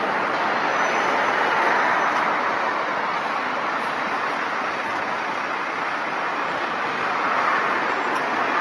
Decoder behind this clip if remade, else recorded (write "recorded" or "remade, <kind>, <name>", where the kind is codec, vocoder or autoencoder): recorded